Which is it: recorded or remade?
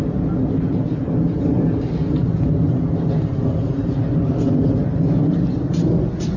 recorded